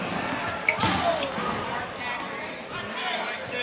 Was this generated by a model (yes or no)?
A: no